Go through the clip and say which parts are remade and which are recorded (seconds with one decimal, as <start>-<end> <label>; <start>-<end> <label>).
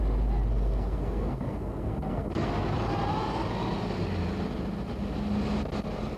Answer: 0.0-0.5 recorded; 0.5-2.5 remade; 2.5-6.2 recorded